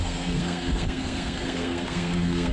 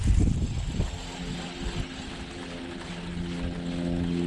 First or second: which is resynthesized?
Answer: first